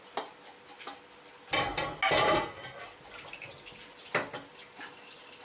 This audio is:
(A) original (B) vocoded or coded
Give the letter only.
A